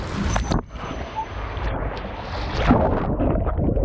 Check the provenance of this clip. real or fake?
real